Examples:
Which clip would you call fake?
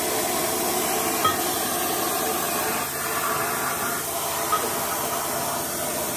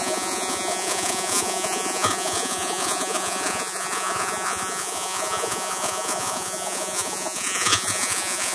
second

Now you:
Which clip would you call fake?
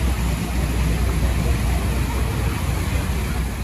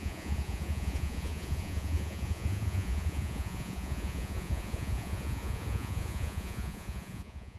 second